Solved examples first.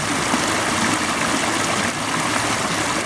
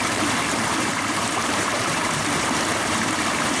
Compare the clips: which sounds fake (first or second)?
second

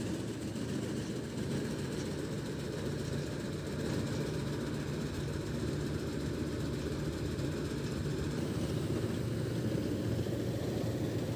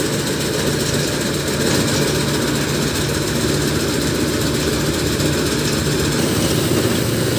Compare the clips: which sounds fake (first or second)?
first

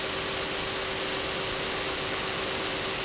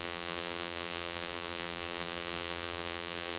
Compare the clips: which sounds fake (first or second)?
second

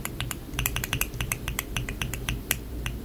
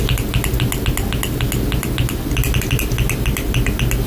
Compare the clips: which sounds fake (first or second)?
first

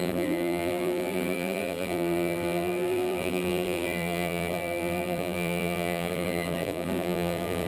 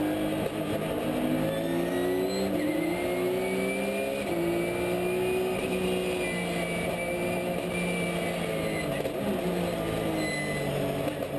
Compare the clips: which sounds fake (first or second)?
first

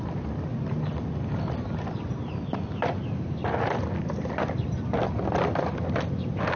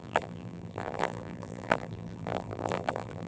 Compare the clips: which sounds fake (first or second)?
second